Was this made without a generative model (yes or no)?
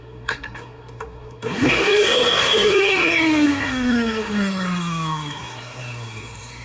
no